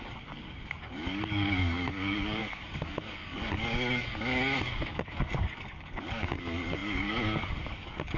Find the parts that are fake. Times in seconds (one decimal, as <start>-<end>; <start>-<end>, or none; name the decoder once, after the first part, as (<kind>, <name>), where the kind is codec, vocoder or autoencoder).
0.0-8.2 (codec, DAC)